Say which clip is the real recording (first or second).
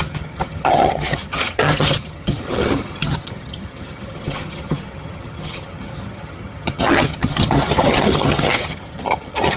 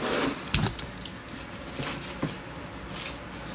second